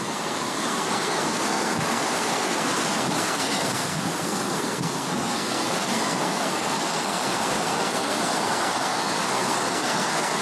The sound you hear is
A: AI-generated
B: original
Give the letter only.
A